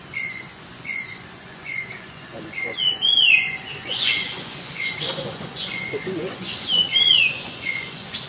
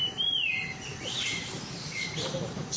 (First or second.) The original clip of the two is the second